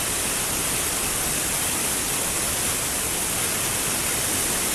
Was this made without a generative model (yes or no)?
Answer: yes